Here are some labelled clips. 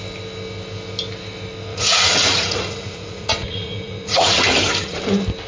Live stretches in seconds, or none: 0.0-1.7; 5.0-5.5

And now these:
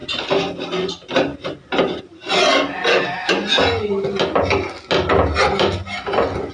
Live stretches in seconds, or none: 0.0-6.5

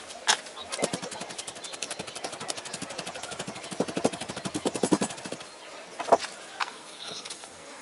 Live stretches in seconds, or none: 0.0-6.6